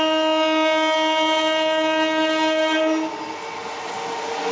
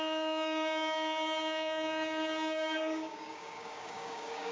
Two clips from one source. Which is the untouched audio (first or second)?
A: first